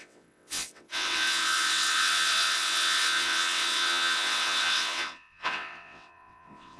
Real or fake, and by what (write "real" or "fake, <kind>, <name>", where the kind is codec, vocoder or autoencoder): fake, vocoder, WaveNeXt